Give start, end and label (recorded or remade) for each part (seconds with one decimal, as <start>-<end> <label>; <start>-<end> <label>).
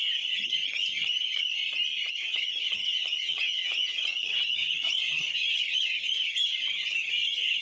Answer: 0.0-1.6 remade; 1.6-2.1 recorded; 2.1-7.6 remade